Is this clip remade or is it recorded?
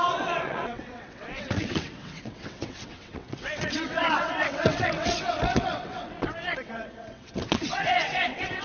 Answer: remade